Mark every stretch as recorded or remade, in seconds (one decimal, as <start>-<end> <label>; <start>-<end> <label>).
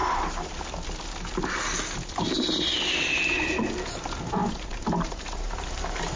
0.0-0.6 remade; 0.6-4.4 recorded; 4.4-6.2 remade